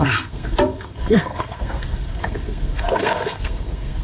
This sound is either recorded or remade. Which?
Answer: remade